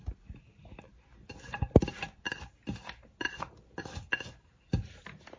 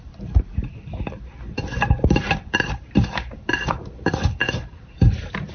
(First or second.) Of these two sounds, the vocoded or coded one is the second